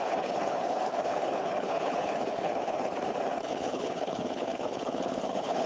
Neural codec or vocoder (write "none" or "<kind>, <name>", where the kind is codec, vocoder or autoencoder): codec, HILCodec